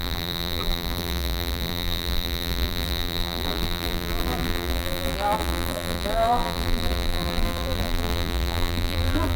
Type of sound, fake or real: fake